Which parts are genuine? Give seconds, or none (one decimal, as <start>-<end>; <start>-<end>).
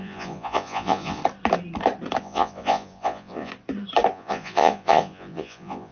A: 1.2-2.2; 3.5-4.1